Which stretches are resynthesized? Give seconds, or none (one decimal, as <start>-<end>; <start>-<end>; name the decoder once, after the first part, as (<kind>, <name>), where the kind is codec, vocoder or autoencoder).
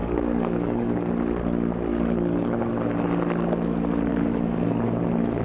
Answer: 0.0-1.1 (codec, DAC); 1.9-2.7; 4.1-5.0